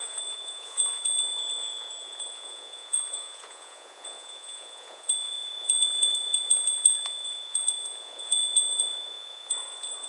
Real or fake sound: fake